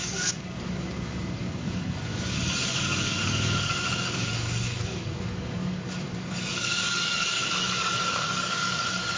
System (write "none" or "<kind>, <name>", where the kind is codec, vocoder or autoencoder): codec, DAC